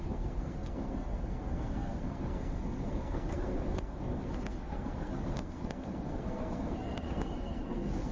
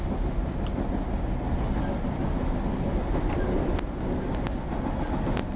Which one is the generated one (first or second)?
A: first